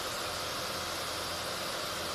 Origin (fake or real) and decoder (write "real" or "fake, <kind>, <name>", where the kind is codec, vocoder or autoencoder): real